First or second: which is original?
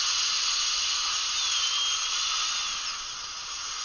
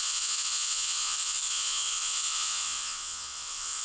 first